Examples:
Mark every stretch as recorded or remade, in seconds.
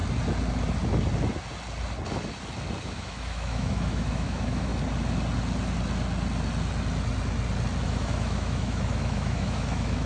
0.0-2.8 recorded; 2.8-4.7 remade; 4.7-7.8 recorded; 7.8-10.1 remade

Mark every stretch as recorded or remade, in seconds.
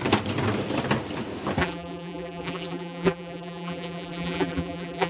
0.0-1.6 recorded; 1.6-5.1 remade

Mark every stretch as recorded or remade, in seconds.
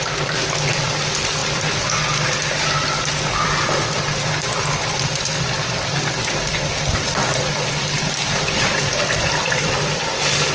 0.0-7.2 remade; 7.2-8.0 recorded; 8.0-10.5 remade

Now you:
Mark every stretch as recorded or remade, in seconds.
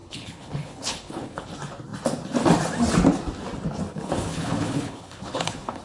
0.0-1.5 remade; 1.5-3.9 recorded; 3.9-5.8 remade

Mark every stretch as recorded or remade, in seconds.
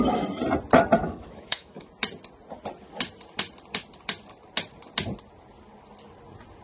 0.0-1.0 recorded; 1.0-1.9 remade; 1.9-6.6 recorded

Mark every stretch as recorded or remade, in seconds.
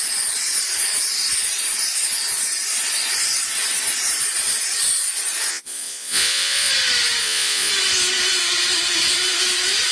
0.0-5.5 recorded; 5.5-6.7 remade; 6.7-7.2 recorded; 7.2-7.7 remade; 7.7-9.9 recorded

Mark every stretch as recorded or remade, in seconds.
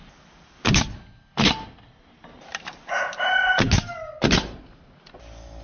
0.0-2.5 recorded; 2.5-3.4 remade; 3.4-5.6 recorded